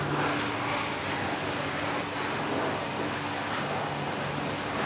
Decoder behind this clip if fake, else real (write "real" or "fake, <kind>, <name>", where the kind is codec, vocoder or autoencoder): real